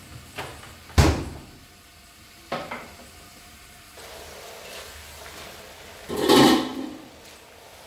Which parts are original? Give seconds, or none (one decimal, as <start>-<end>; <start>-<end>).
0.0-0.5; 1.2-1.9; 2.7-6.7